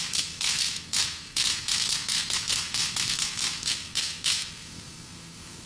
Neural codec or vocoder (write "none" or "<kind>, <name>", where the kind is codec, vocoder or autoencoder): codec, SNAC